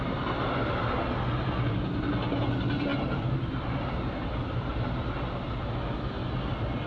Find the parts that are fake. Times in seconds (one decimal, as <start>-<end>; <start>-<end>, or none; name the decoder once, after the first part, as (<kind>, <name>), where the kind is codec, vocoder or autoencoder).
none

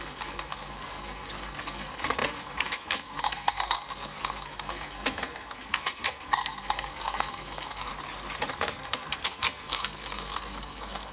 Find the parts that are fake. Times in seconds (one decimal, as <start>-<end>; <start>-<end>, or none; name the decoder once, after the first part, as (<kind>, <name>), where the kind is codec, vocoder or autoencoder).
0.0-7.9 (codec, SNAC); 8.5-11.1